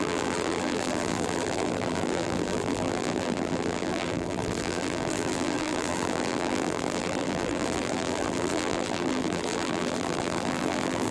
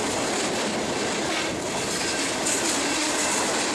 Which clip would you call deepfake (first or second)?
first